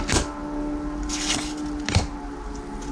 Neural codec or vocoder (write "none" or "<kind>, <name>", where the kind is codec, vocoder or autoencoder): none